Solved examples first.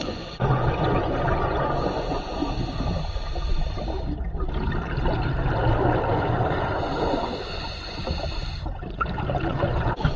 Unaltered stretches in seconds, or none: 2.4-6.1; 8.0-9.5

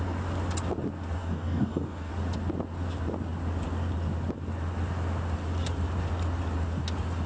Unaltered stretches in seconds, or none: 0.0-1.2; 2.1-7.3

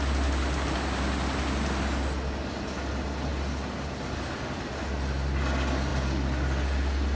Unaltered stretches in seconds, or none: 0.0-7.2

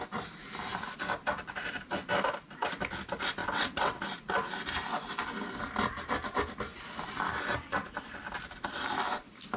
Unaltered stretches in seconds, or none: 0.0-3.4; 4.0-9.6